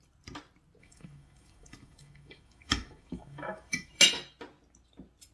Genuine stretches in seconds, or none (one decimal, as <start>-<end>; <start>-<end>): 0.0-0.8; 4.0-5.3